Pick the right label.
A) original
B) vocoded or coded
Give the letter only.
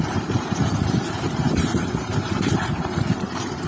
B